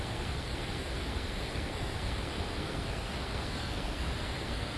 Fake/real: fake